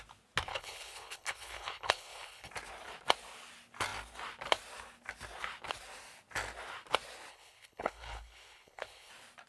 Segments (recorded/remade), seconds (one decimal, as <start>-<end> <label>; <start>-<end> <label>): 0.0-0.5 recorded; 0.5-2.5 remade; 2.5-7.3 recorded; 7.3-9.1 remade; 9.1-9.5 recorded